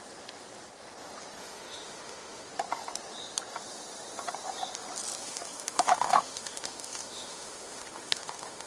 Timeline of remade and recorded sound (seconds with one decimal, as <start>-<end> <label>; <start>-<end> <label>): 0.0-1.4 recorded; 1.4-2.5 remade; 2.5-5.2 recorded; 5.2-8.7 remade